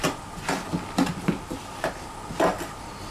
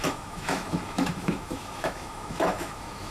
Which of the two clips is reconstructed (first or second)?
second